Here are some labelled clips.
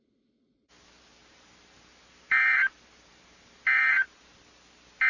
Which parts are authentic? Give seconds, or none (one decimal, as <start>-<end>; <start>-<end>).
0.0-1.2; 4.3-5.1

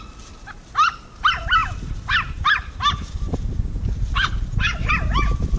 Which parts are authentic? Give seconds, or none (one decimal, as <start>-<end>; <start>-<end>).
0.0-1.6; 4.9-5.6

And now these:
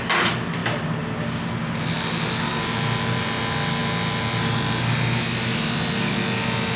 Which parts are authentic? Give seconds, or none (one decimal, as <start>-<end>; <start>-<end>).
0.0-6.8

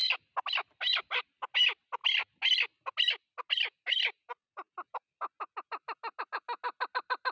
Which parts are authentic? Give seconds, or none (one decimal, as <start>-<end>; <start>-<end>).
0.9-7.3

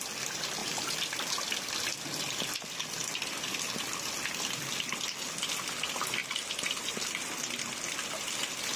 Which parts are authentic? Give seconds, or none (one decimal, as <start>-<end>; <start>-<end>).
0.0-0.6; 1.4-8.8

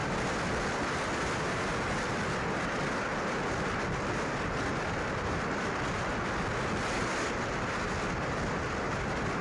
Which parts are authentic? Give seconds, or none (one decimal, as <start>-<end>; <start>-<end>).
0.0-9.4